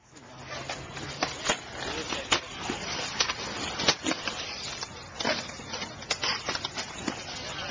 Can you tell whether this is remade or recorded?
recorded